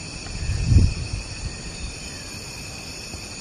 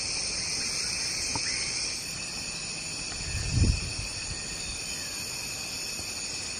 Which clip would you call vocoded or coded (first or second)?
first